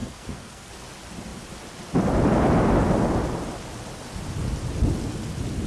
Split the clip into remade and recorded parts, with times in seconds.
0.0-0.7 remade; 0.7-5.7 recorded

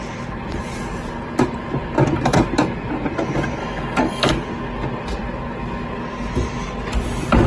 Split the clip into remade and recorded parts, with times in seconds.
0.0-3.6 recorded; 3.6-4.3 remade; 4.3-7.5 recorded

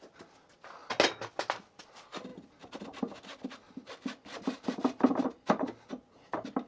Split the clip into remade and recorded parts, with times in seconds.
0.0-6.7 recorded

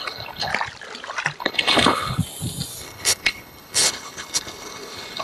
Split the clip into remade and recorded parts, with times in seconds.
0.0-0.5 remade; 0.5-1.4 recorded; 1.4-2.2 remade; 2.2-2.8 recorded; 2.8-5.2 remade

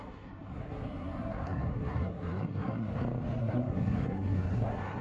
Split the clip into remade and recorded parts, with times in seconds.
0.0-2.9 remade; 2.9-3.4 recorded; 3.4-5.0 remade